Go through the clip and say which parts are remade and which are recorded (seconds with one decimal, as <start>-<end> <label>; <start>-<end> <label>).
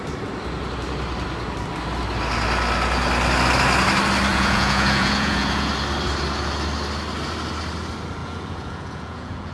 0.0-4.3 recorded; 4.3-5.7 remade; 5.7-8.2 recorded; 8.2-9.5 remade